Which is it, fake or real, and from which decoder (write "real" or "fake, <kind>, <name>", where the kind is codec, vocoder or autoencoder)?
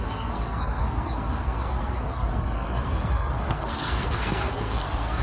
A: fake, codec, SNAC